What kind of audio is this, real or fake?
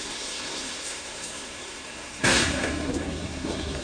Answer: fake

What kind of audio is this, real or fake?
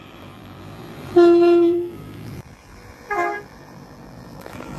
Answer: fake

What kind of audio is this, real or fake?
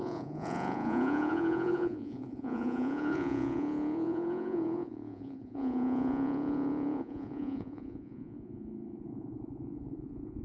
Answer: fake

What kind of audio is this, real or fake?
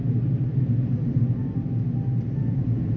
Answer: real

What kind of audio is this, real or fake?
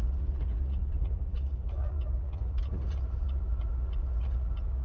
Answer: fake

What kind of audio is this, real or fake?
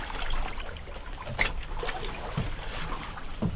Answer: real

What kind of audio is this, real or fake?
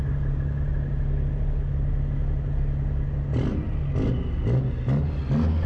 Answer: real